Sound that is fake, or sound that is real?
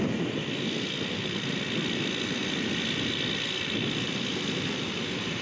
real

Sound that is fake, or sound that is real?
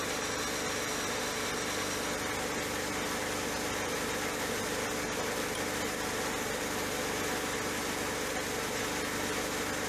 real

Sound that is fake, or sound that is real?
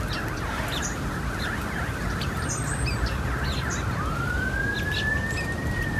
real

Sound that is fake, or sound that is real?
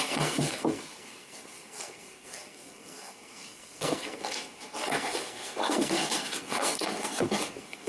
fake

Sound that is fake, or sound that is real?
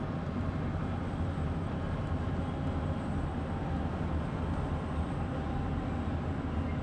real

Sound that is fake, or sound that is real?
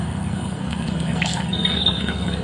fake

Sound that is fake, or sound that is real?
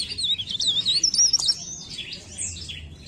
real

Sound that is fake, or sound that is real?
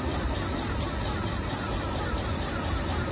real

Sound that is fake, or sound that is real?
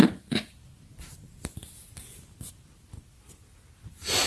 real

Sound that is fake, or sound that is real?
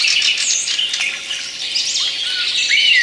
real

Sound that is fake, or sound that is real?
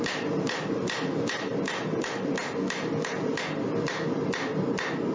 real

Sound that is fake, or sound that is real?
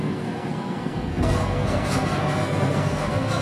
fake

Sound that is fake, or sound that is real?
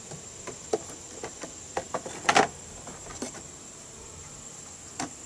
real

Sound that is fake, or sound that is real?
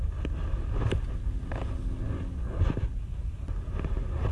real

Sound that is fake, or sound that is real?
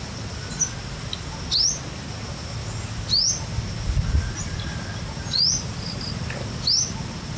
real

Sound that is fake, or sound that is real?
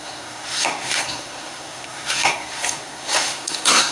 fake